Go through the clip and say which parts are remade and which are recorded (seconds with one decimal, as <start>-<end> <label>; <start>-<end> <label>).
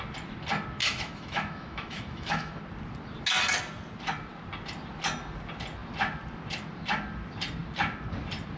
0.0-0.8 recorded; 0.8-2.6 remade; 2.6-8.6 recorded